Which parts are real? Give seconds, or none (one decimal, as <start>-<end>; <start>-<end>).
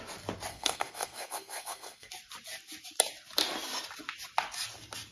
0.0-0.5; 2.1-5.1